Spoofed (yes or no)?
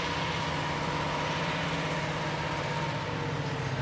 no